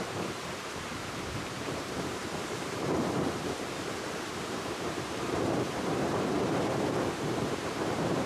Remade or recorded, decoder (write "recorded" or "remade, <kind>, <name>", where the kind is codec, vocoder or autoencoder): remade, vocoder, BigVGAN v2